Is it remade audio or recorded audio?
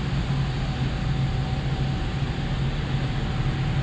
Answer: recorded